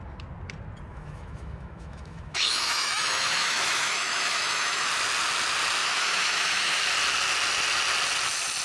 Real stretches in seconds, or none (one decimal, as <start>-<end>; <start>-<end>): 0.0-0.9; 4.9-5.8; 6.8-8.6